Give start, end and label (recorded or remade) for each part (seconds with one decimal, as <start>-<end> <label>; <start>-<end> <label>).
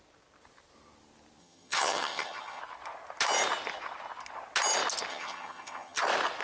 0.0-1.4 recorded; 1.4-2.6 remade; 2.6-5.1 recorded; 5.1-6.0 remade; 6.0-6.4 recorded